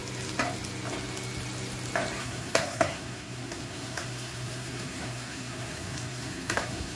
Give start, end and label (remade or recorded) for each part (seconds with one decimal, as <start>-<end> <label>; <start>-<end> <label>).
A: 0.0-2.2 recorded; 2.2-7.0 remade

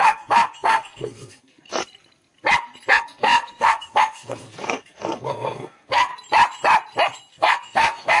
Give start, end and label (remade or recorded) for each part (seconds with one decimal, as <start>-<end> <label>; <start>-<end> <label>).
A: 0.0-1.8 remade; 1.8-2.9 recorded; 2.9-6.1 remade; 6.1-7.3 recorded; 7.3-8.2 remade

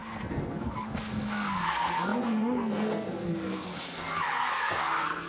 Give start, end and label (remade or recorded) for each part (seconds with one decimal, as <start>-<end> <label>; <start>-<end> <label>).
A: 0.0-5.3 remade